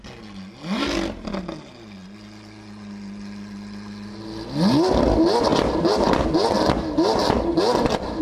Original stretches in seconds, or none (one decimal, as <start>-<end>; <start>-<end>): 0.0-8.2